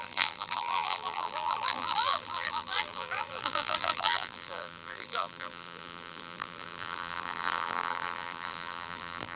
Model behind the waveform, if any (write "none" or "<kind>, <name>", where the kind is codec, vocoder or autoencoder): vocoder, BigVGAN v2